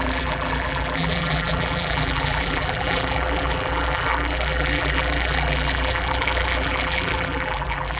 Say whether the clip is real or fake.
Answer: fake